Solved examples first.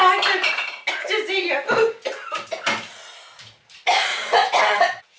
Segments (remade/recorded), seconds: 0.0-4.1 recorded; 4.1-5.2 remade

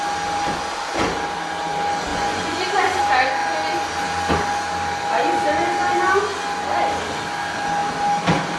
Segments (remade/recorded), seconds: 0.0-2.1 recorded; 2.1-3.0 remade; 3.0-8.6 recorded

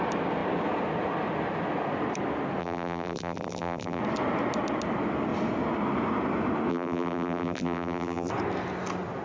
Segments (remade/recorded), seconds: 0.0-2.6 recorded; 2.6-4.0 remade; 4.0-6.7 recorded; 6.7-8.3 remade; 8.3-9.2 recorded

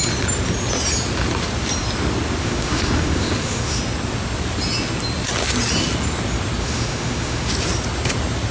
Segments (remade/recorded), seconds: 0.0-2.4 recorded; 2.4-3.8 remade; 3.8-6.6 recorded; 6.6-7.5 remade; 7.5-8.5 recorded

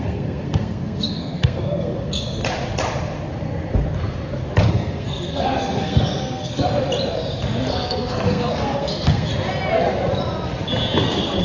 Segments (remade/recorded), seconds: 0.0-2.4 remade; 2.4-4.7 recorded; 4.7-6.7 remade; 6.7-7.7 recorded; 7.7-9.3 remade; 9.3-11.0 recorded; 11.0-11.4 remade